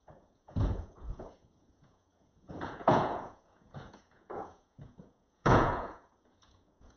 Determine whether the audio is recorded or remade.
remade